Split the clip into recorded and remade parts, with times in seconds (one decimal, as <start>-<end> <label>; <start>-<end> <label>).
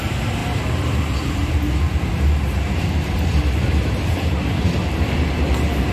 0.0-2.1 recorded; 2.1-5.9 remade